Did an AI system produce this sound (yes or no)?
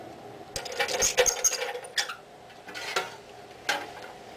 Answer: no